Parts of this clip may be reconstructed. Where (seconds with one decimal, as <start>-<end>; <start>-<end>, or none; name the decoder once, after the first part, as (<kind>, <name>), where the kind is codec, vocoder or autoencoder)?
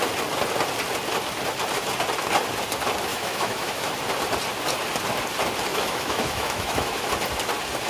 3.1-3.9 (autoencoder, DAC-VAE); 5.7-7.1